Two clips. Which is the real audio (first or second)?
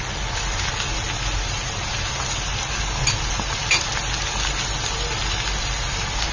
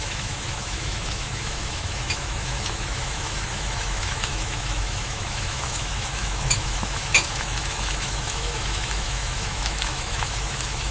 first